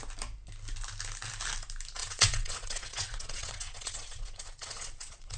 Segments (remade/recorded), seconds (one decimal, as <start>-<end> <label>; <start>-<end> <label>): 0.0-2.0 recorded; 2.0-5.4 remade